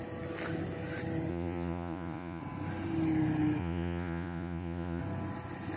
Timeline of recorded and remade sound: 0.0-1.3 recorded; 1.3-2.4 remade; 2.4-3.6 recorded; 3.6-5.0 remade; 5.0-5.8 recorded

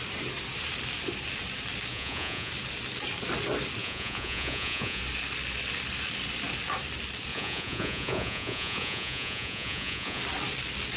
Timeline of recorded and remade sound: 0.0-1.9 recorded; 1.9-2.5 remade; 2.5-3.8 recorded; 3.8-5.0 remade; 5.0-7.3 recorded; 7.3-10.2 remade; 10.2-11.0 recorded

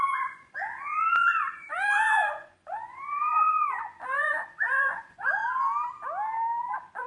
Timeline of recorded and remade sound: 0.0-5.4 remade; 5.4-6.6 recorded; 6.6-7.1 remade